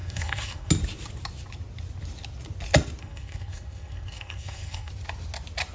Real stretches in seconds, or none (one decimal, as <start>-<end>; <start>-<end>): 0.7-3.0; 4.9-5.7